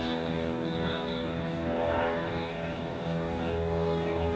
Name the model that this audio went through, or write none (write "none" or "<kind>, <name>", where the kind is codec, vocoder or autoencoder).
codec, DAC